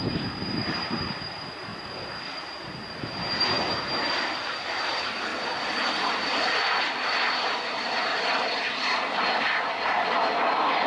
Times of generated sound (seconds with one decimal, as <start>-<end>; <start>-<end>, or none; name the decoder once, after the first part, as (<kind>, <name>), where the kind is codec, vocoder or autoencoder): 0.0-1.7 (vocoder, BigVGAN v2); 2.9-5.3; 6.1-8.1; 9.4-10.9